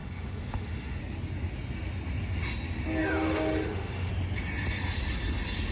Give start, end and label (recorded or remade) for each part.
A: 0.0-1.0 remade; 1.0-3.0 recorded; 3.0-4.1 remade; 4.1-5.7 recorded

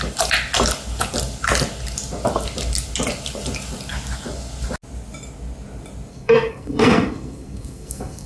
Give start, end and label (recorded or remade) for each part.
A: 0.0-6.1 recorded; 6.1-8.3 remade

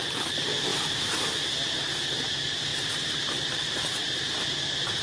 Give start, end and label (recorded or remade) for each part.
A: 0.0-0.7 recorded; 0.7-1.2 remade; 1.2-2.7 recorded; 2.7-3.3 remade; 3.3-4.0 recorded; 4.0-5.0 remade

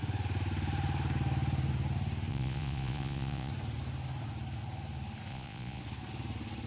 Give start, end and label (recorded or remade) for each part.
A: 0.0-2.3 recorded; 2.3-3.5 remade; 3.5-5.3 recorded; 5.3-5.8 remade; 5.8-6.7 recorded

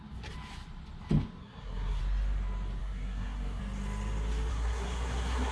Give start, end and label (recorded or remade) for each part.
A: 0.0-1.4 recorded; 1.4-2.0 remade; 2.0-2.8 recorded; 2.8-3.6 remade; 3.6-4.5 recorded; 4.5-5.5 remade

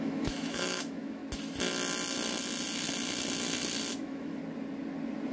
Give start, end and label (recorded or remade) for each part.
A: 0.0-1.2 remade; 1.2-3.9 recorded; 3.9-4.4 remade; 4.4-5.3 recorded